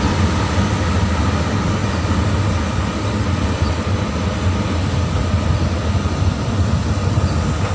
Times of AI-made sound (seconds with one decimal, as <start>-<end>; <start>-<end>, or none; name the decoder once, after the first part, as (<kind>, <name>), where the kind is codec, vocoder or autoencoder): none